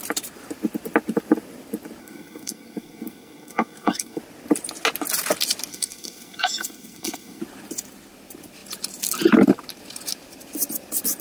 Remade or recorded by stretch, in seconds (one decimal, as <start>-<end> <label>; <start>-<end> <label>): 0.0-2.0 recorded; 2.0-4.2 remade; 4.2-5.7 recorded; 5.7-7.4 remade; 7.4-11.2 recorded